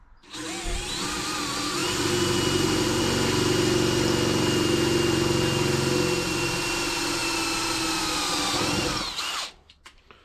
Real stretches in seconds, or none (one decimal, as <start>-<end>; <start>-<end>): 0.0-10.2